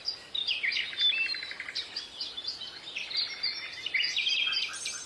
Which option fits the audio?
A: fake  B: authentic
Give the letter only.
B